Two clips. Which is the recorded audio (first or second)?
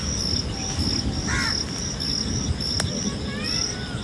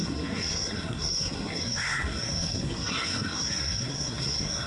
first